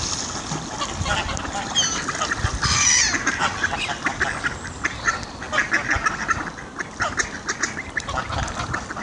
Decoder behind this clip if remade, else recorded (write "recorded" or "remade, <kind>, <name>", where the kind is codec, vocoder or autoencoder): recorded